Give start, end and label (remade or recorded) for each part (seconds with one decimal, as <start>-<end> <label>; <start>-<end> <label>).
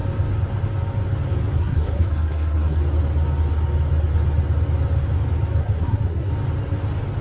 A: 0.0-1.6 recorded; 1.6-2.8 remade; 2.8-5.6 recorded; 5.6-6.3 remade; 6.3-7.2 recorded